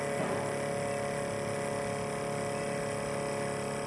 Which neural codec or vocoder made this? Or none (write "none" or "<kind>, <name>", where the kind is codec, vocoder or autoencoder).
none